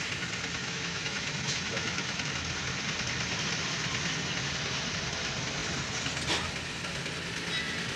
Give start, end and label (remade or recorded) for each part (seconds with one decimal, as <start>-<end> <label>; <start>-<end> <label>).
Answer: 0.0-0.6 recorded; 0.6-2.3 remade; 2.3-8.0 recorded